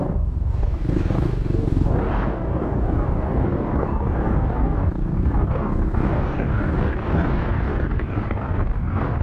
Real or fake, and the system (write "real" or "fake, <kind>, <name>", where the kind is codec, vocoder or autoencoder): fake, codec, DAC